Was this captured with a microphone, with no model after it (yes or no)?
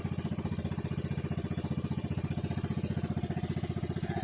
yes